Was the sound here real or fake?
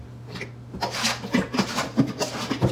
real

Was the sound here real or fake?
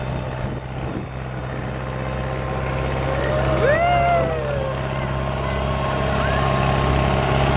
real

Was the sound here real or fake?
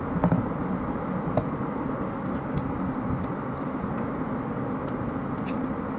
real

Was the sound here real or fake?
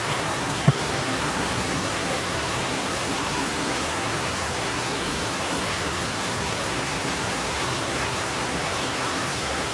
fake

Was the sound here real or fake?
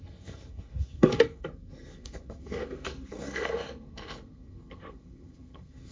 fake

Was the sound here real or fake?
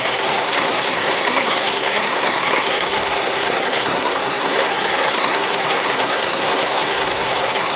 fake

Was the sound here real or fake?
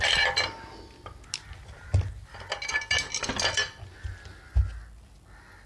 real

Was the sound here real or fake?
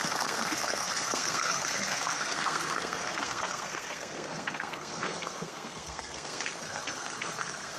fake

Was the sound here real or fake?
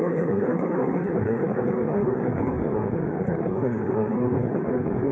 fake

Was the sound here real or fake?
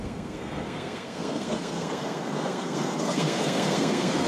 fake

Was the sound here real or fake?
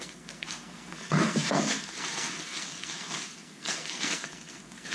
fake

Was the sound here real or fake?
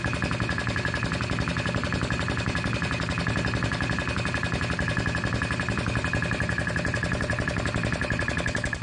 real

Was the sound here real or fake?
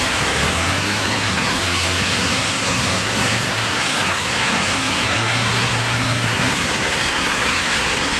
fake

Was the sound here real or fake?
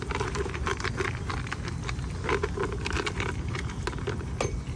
real